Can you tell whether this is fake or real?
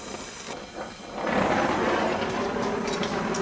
real